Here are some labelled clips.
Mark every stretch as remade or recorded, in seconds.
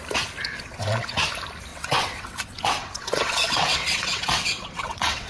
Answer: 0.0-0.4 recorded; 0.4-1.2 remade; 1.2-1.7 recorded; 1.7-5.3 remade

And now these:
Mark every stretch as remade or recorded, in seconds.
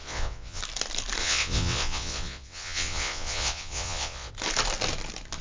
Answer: 0.0-0.6 remade; 0.6-1.2 recorded; 1.2-4.3 remade; 4.3-5.4 recorded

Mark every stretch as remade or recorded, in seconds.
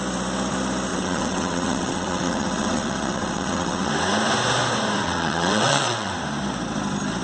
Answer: 0.0-0.9 recorded; 0.9-3.9 remade; 3.9-5.0 recorded; 5.0-6.1 remade; 6.1-7.2 recorded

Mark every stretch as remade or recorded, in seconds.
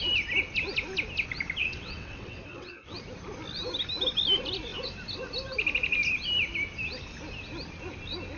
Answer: 0.0-1.6 recorded; 1.6-3.0 remade; 3.0-8.4 recorded